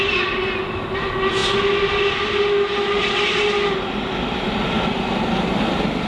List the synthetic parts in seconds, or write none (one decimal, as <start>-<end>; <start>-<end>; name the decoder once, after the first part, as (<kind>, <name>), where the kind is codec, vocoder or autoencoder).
none